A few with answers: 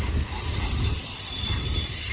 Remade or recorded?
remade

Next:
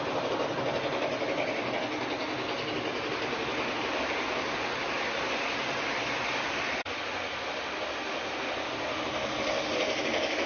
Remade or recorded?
recorded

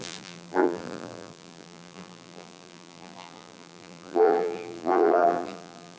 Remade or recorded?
remade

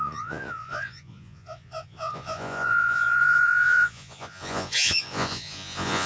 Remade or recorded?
remade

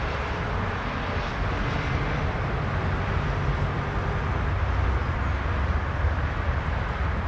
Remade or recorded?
recorded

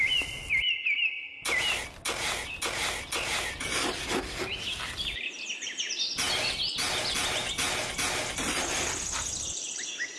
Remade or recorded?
recorded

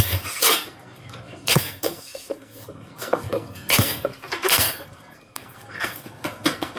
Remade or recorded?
remade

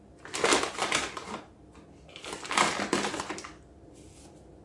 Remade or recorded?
recorded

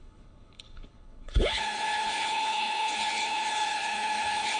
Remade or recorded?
remade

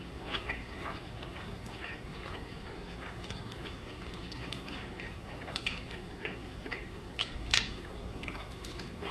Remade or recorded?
remade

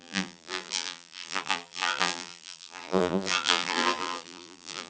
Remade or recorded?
remade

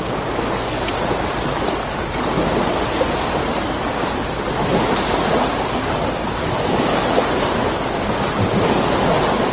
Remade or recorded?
recorded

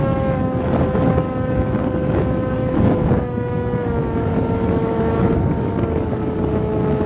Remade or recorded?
remade